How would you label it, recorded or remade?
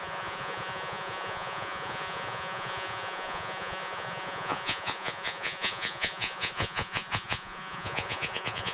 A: remade